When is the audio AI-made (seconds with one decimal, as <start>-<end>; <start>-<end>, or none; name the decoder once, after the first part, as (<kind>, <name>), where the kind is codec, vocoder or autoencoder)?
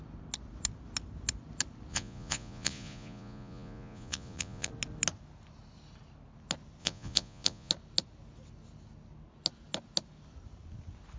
1.9-4.7 (vocoder, Vocos); 6.8-7.7